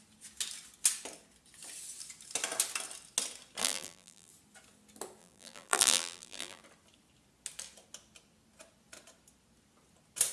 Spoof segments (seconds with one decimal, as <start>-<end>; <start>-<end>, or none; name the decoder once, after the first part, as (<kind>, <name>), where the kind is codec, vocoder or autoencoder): 3.6-4.3 (vocoder, BigVGAN v2); 5.2-6.6